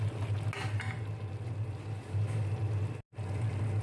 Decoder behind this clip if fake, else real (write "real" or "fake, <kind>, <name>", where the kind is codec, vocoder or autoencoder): real